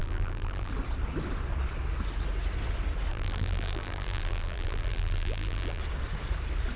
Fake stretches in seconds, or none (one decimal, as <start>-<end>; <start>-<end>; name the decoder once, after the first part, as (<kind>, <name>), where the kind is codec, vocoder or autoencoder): 0.0-0.7 (vocoder, BigVGAN v2); 3.1-5.8